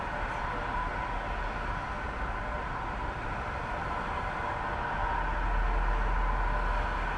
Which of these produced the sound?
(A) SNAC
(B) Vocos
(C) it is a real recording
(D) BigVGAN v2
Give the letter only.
C